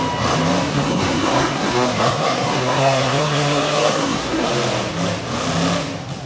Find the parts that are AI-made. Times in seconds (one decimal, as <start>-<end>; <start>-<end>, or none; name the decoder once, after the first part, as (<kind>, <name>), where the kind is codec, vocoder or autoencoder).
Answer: 0.7-4.5 (codec, SNAC)